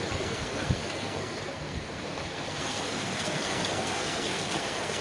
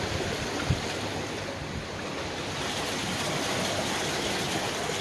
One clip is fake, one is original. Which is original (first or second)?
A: second